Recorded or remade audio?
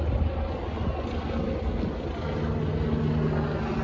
recorded